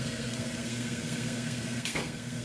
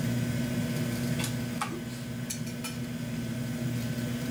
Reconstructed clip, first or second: first